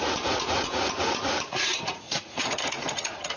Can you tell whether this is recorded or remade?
remade